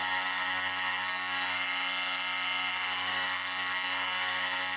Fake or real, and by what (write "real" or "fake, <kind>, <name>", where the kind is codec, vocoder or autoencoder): fake, codec, SNAC